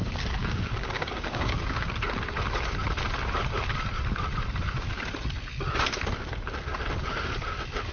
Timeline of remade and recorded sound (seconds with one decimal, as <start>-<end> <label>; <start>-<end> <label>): 0.0-0.4 recorded; 0.4-1.9 remade; 1.9-7.9 recorded

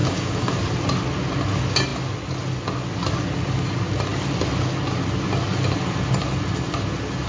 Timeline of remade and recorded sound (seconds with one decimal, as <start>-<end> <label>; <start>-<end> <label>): 0.0-0.5 remade; 0.5-7.3 recorded

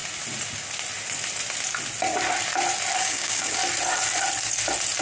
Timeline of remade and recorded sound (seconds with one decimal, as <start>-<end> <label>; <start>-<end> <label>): 0.0-3.0 recorded; 3.0-3.6 remade; 3.6-5.0 recorded